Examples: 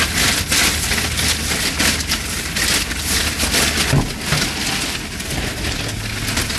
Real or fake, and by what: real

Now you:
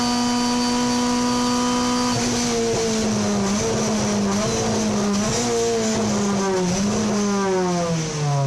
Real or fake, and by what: real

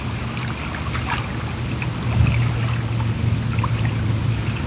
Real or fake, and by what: real